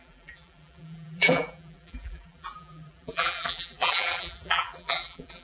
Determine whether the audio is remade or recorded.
remade